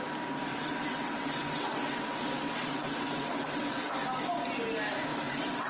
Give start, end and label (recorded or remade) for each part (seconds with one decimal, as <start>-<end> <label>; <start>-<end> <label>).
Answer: 0.0-0.5 recorded; 0.5-3.9 remade; 3.9-5.1 recorded; 5.1-5.7 remade